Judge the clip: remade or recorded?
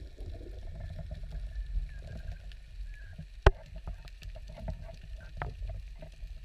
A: recorded